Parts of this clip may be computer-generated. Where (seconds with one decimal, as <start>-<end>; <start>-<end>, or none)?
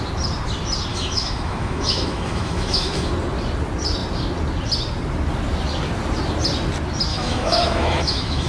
0.9-3.1; 7.1-8.5